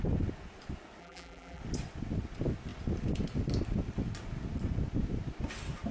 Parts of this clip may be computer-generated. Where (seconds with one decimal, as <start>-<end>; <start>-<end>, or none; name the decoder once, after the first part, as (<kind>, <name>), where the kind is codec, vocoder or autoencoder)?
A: 1.0-1.6 (vocoder, BigVGAN v2)